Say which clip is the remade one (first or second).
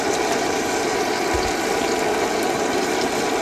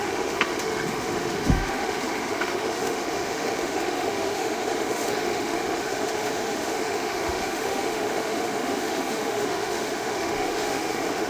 second